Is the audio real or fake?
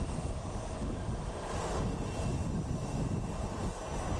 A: real